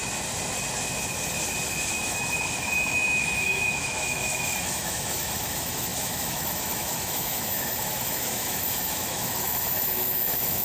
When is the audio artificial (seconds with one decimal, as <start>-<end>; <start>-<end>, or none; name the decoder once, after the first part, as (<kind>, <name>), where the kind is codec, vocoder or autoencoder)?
1.9-10.6 (autoencoder, DAC-VAE)